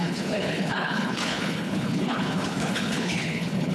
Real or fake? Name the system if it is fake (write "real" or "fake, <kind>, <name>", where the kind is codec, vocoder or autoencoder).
fake, codec, HILCodec